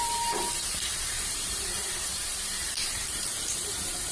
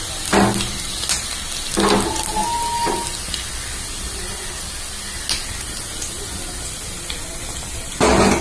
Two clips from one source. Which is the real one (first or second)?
second